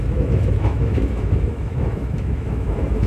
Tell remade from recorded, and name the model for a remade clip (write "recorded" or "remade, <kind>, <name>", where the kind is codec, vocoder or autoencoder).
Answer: remade, autoencoder, DAC-VAE